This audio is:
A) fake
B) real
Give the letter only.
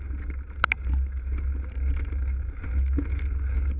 B